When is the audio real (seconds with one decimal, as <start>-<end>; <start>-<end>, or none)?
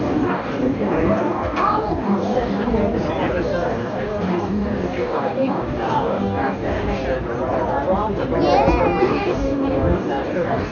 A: 2.8-3.3; 7.0-9.0